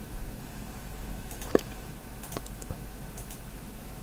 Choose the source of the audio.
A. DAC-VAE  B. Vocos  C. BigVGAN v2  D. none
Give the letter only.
A